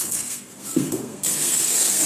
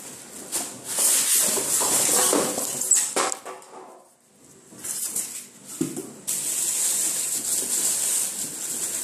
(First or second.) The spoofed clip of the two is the first